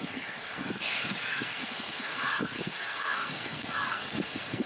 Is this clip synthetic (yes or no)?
yes